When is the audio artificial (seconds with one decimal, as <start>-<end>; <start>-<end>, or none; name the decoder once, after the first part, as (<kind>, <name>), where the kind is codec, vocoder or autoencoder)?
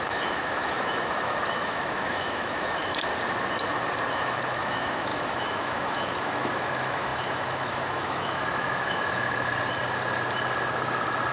0.0-3.1 (autoencoder, DAC-VAE); 4.1-9.5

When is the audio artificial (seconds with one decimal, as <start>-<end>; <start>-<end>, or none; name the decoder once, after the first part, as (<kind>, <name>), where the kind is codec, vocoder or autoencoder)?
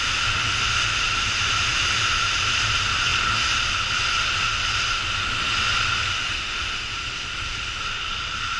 6.1-6.9 (autoencoder, DAC-VAE)